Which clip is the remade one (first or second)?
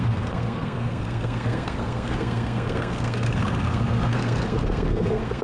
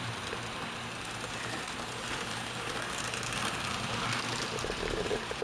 first